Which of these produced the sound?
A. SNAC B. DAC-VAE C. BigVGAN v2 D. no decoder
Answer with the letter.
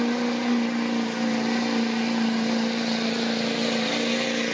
D